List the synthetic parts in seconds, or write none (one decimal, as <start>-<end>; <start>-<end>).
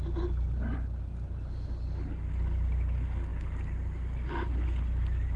none